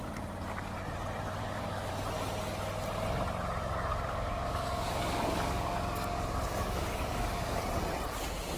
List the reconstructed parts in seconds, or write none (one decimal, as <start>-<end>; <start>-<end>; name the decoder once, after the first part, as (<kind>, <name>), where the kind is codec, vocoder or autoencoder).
1.4-1.9 (codec, DAC); 3.9-7.6